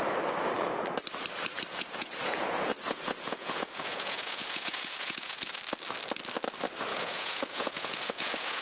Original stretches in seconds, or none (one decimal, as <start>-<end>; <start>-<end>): 0.0-1.5; 5.6-6.9